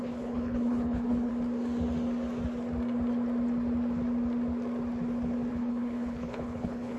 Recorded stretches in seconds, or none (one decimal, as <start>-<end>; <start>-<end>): 1.3-5.5